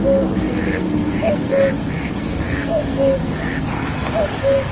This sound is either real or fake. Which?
fake